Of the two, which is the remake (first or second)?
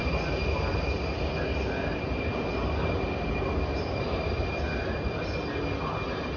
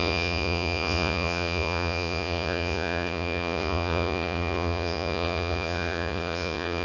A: second